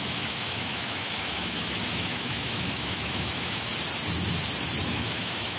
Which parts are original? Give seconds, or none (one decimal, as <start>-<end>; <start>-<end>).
3.7-4.9